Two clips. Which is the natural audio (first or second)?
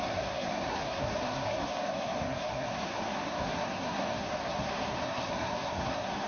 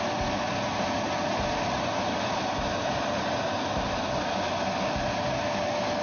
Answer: second